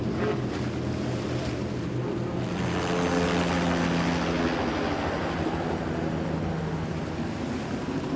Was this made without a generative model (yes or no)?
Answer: yes